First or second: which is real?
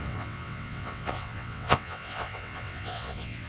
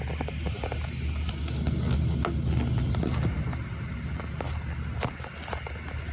second